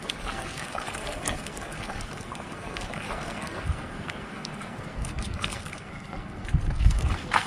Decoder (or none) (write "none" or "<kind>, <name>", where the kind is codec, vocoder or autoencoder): codec, SNAC